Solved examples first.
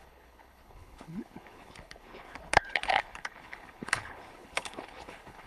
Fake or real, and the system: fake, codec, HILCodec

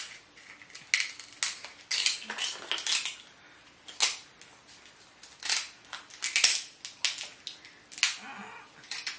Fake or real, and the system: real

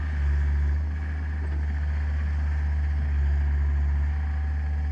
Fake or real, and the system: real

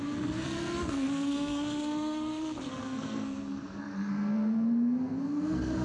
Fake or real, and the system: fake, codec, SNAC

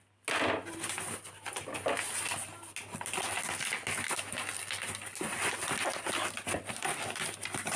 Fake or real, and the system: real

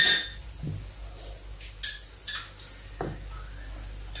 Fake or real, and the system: real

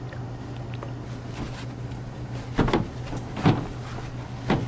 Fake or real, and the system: real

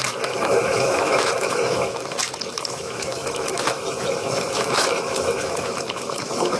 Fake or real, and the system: fake, autoencoder, DAC-VAE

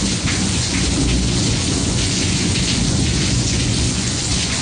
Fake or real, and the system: fake, vocoder, Vocos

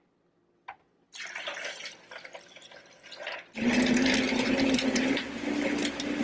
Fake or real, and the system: real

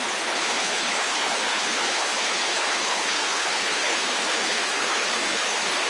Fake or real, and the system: fake, codec, HILCodec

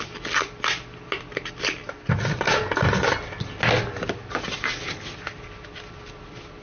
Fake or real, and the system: real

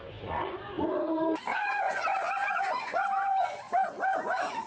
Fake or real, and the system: fake, vocoder, Vocos